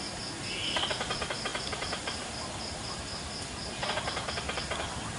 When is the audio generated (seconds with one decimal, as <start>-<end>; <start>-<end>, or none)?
1.5-4.6